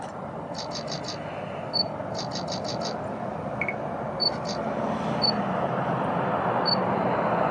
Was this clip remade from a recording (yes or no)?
no